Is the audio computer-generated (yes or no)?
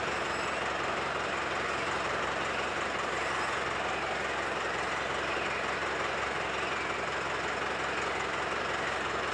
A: no